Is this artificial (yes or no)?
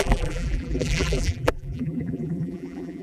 yes